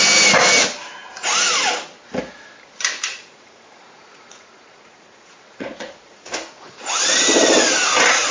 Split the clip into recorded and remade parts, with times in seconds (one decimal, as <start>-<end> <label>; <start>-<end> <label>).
0.0-3.2 recorded; 3.2-7.0 remade; 7.0-8.3 recorded